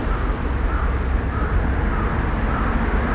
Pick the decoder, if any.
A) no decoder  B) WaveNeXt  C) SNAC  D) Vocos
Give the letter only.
A